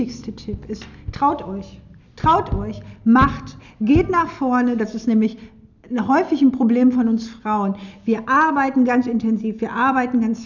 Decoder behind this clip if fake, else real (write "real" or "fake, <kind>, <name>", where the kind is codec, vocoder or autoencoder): real